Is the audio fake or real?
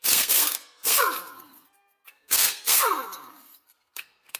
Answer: fake